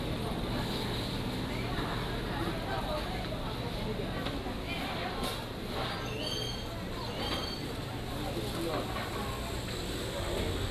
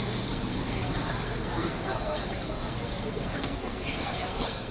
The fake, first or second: second